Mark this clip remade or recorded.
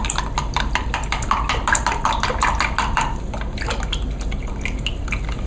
recorded